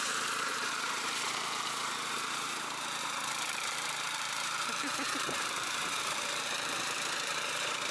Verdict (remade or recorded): remade